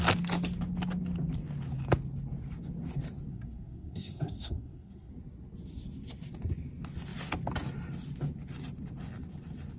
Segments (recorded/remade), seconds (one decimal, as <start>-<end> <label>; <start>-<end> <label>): 0.0-3.3 recorded; 3.3-5.1 remade; 5.1-9.8 recorded